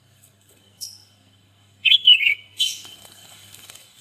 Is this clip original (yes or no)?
no